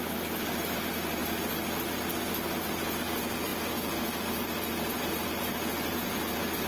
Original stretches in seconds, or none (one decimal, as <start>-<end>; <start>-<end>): 0.0-6.7